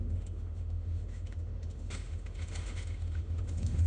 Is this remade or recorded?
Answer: remade